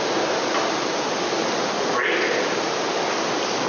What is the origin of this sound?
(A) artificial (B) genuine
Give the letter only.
B